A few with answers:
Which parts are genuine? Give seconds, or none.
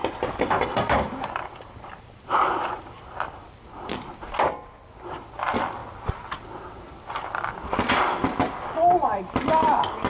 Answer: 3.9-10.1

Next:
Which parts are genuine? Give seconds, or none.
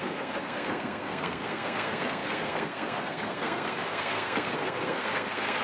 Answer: none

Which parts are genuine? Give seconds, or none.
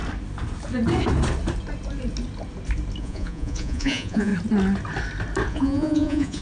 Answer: 0.0-3.0; 4.3-5.5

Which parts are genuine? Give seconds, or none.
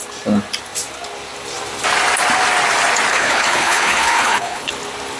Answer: 0.0-3.1; 4.7-5.2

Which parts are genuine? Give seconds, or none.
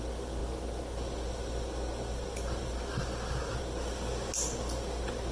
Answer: 0.0-5.3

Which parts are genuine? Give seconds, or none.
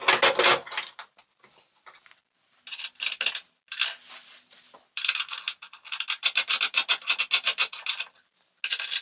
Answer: 0.0-9.0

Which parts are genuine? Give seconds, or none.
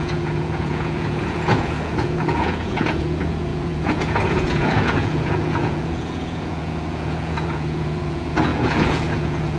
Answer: none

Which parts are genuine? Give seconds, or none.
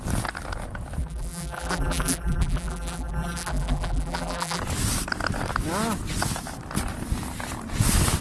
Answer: 0.0-1.0; 4.6-8.2